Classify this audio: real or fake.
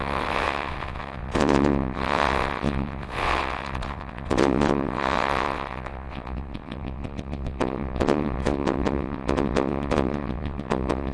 fake